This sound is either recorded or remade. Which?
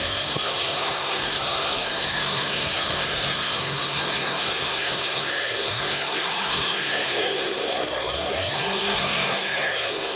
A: remade